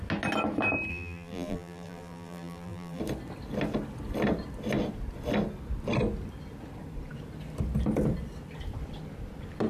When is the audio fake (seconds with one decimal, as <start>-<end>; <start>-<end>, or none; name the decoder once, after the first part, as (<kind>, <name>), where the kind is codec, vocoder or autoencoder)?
0.9-3.0 (vocoder, BigVGAN v2)